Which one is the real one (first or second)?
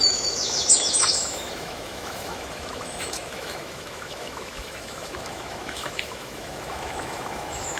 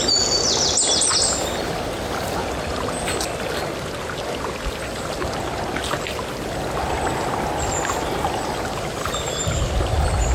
second